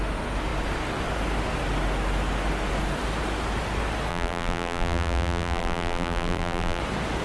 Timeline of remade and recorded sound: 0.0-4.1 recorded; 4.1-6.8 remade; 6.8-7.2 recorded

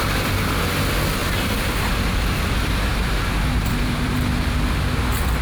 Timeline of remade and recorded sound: 0.0-1.2 recorded; 1.2-2.5 remade; 2.5-2.9 recorded; 2.9-4.2 remade; 4.2-5.4 recorded

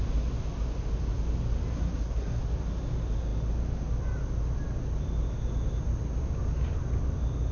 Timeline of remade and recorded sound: 0.0-1.7 recorded; 1.7-2.4 remade; 2.4-7.5 recorded

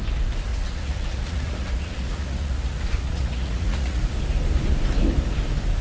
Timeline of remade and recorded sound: 0.0-0.5 recorded; 0.5-4.0 remade; 4.0-5.8 recorded

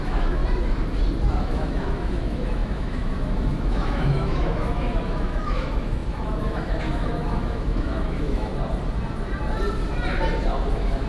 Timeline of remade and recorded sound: 0.0-0.4 remade; 0.4-1.4 recorded; 1.4-8.5 remade; 8.5-10.7 recorded; 10.7-11.1 remade

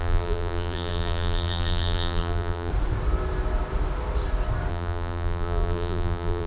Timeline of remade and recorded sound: 0.0-2.7 remade; 2.7-4.7 recorded; 4.7-6.5 remade